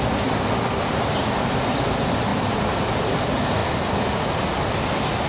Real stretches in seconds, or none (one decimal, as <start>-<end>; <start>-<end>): 0.0-5.3